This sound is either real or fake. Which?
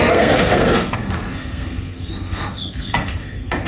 fake